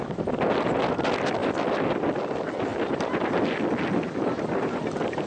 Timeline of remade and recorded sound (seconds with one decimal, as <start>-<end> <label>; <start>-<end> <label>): 0.0-1.4 recorded; 1.4-1.9 remade; 1.9-2.7 recorded; 2.7-5.3 remade